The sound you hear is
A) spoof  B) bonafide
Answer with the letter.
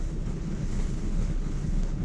A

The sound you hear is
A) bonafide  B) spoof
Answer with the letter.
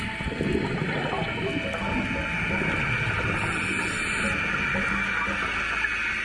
A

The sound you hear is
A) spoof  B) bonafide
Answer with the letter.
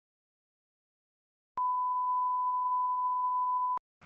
B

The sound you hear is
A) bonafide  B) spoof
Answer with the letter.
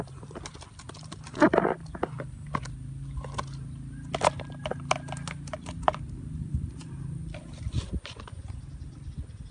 A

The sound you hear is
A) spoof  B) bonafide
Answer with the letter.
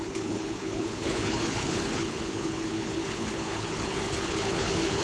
A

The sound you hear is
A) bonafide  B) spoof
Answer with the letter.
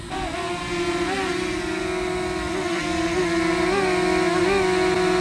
A